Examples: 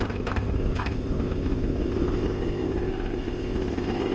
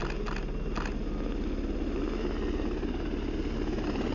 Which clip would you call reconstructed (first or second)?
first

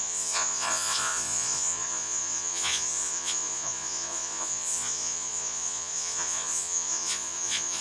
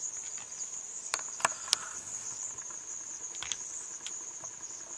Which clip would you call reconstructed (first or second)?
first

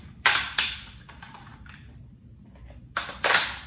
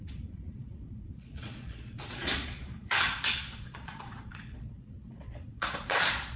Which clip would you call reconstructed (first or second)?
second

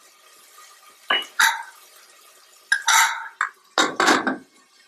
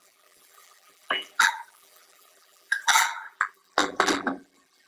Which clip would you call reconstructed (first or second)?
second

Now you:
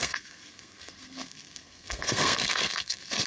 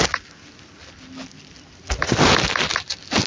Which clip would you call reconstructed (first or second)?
first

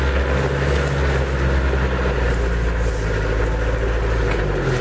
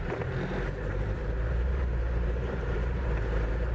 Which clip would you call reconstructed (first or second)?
second